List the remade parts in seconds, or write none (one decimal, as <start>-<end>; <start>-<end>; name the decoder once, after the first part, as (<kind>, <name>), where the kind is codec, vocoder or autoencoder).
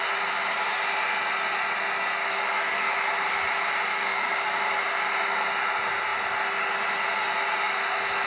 2.2-2.9 (codec, DAC); 3.9-4.6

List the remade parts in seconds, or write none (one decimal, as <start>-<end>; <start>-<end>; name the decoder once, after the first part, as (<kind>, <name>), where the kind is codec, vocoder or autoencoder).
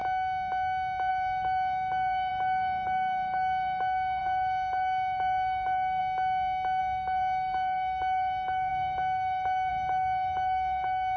1.1-6.0 (codec, DAC); 6.8-11.2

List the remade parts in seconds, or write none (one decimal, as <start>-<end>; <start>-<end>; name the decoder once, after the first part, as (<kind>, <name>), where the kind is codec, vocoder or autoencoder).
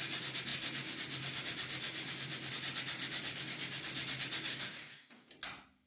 4.5-5.3 (codec, DAC)